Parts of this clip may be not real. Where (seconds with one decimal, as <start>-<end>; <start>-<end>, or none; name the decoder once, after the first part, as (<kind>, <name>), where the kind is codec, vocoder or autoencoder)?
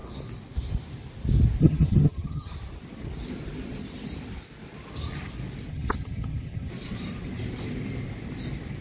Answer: 1.6-2.5 (vocoder, HiFi-GAN); 5.7-6.7